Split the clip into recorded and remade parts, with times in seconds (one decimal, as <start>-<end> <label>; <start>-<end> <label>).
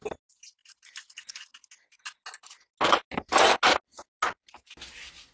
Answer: 0.0-5.3 recorded